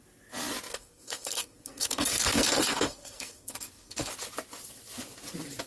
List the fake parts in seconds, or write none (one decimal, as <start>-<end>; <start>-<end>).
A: 0.7-4.1

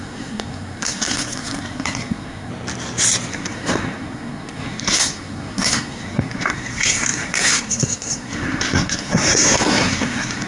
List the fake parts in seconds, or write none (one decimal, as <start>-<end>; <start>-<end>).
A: 0.0-2.5; 3.3-10.5

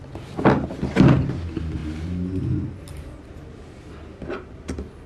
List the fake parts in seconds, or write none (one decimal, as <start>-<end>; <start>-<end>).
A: none